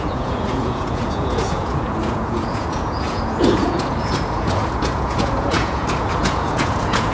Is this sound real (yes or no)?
no